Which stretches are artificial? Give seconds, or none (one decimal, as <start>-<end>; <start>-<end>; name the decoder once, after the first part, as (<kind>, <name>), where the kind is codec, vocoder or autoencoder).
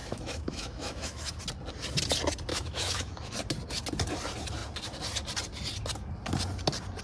0.0-1.4 (autoencoder, DAC-VAE); 2.5-3.3